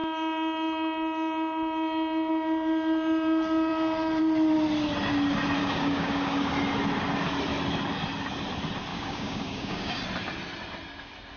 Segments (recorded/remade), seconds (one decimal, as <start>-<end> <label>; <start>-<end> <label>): 0.0-5.6 recorded; 5.6-6.5 remade; 6.5-8.9 recorded; 8.9-9.9 remade; 9.9-11.4 recorded